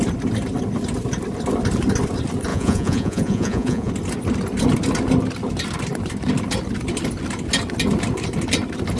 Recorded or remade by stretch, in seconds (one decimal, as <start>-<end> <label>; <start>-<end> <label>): 0.0-2.5 recorded; 2.5-3.9 remade; 3.9-9.0 recorded